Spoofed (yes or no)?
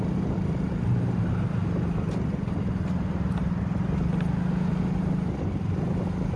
no